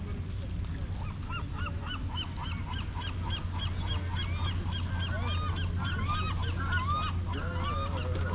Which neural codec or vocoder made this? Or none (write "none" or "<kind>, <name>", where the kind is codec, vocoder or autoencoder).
none